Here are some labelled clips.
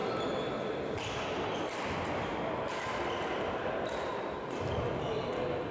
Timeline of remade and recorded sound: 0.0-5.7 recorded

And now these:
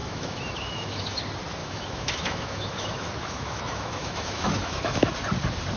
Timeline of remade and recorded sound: 0.0-1.2 remade; 1.2-1.6 recorded; 1.6-5.1 remade; 5.1-5.8 recorded

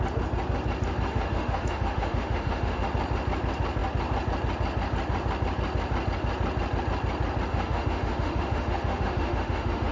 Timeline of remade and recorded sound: 0.0-1.1 recorded; 1.1-2.8 remade; 2.8-7.5 recorded; 7.5-9.9 remade

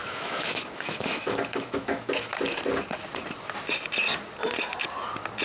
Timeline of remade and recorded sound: 0.0-2.3 remade; 2.3-5.4 recorded

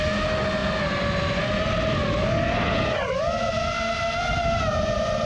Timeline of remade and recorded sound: 0.0-5.3 recorded